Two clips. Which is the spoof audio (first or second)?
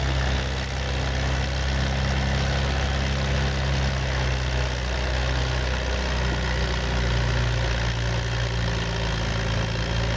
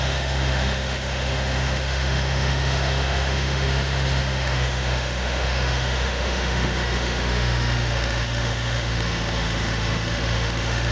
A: second